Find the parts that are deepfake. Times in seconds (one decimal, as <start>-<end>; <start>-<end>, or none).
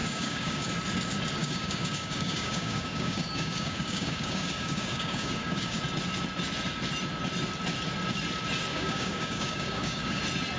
0.0-0.7; 1.4-5.8; 8.7-10.2